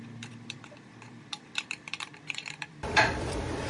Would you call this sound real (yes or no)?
no